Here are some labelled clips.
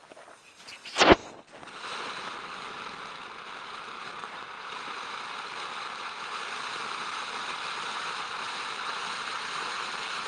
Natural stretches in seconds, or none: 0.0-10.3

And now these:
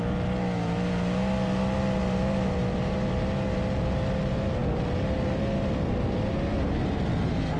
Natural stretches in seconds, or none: 0.0-7.6

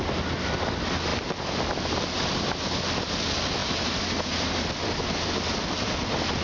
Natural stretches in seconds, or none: 0.0-6.4

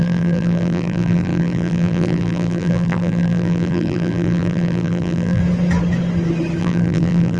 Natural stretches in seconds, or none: 5.4-6.6

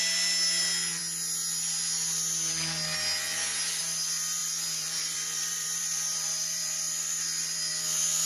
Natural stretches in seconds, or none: 0.0-4.4; 7.7-8.3